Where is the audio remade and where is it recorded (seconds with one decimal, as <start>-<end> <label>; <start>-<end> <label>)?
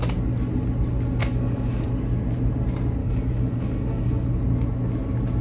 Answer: 0.0-1.2 recorded; 1.2-1.9 remade; 1.9-3.0 recorded; 3.0-4.4 remade; 4.4-5.4 recorded